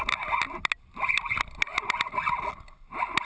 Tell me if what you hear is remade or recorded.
recorded